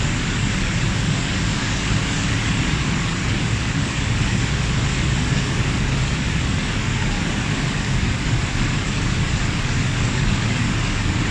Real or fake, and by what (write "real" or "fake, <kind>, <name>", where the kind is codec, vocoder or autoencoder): fake, codec, DAC